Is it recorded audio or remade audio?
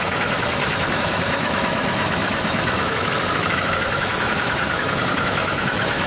remade